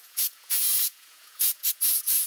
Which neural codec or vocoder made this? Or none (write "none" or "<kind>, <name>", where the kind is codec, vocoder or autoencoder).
vocoder, Vocos